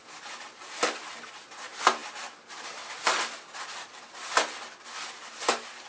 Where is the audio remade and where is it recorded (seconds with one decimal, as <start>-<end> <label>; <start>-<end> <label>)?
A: 0.0-5.9 recorded